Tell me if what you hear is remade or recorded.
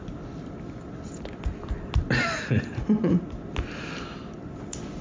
recorded